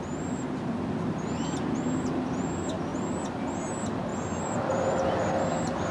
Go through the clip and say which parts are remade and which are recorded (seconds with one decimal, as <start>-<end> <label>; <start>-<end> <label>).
0.0-5.9 recorded

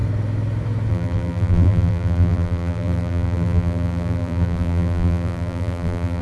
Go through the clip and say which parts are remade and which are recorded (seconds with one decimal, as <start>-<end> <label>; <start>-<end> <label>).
0.0-0.9 recorded; 0.9-6.2 remade

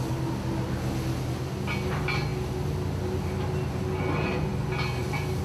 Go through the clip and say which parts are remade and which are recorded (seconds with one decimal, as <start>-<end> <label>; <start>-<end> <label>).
0.0-5.4 recorded

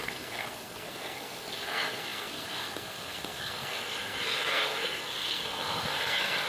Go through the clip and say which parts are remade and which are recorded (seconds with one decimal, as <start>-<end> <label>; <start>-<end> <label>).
0.0-6.5 remade